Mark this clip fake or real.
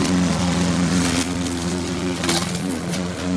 fake